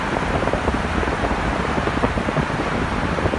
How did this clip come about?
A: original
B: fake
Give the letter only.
B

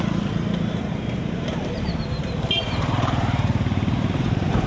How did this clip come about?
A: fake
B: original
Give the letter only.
A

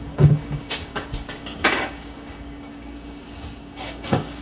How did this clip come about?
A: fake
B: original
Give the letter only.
A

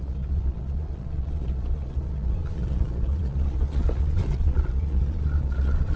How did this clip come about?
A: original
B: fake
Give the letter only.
B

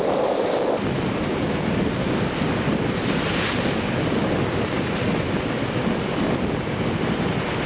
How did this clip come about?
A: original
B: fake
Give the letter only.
A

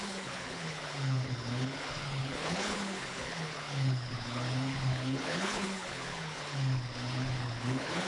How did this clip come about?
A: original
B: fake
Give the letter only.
B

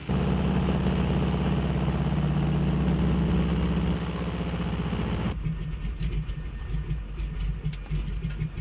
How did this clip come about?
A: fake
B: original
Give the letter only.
B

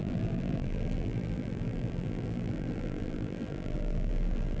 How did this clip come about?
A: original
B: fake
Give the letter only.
B